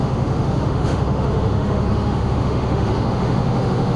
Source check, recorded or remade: remade